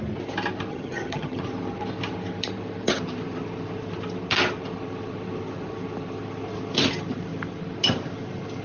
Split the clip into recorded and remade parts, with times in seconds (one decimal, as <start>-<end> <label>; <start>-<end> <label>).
0.0-0.7 recorded; 0.7-1.4 remade; 1.4-8.6 recorded